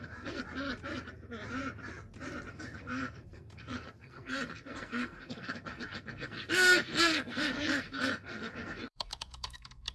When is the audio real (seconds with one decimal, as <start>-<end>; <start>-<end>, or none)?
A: 0.4-2.5